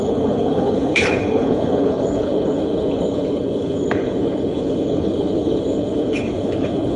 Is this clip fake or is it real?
fake